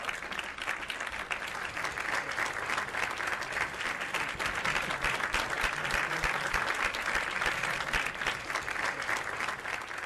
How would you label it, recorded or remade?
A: recorded